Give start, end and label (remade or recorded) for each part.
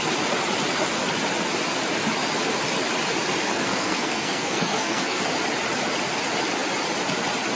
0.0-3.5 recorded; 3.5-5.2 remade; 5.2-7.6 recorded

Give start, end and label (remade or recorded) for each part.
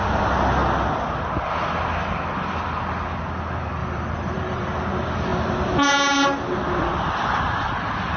0.0-3.8 recorded; 3.8-4.6 remade; 4.6-8.2 recorded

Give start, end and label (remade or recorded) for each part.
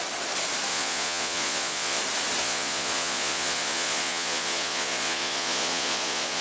0.0-0.7 recorded; 0.7-2.0 remade; 2.0-2.4 recorded; 2.4-6.4 remade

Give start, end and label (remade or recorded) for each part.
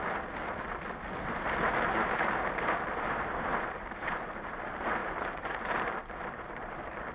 0.0-3.5 recorded; 3.5-4.6 remade; 4.6-5.0 recorded; 5.0-7.1 remade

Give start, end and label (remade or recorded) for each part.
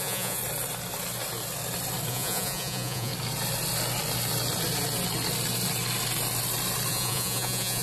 0.0-0.4 remade; 0.4-2.1 recorded; 2.1-3.1 remade; 3.1-6.9 recorded; 6.9-7.8 remade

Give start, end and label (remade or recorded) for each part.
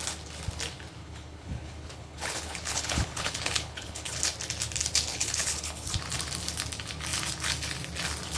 0.0-1.0 recorded; 1.0-4.2 remade; 4.2-5.1 recorded; 5.1-5.9 remade; 5.9-8.4 recorded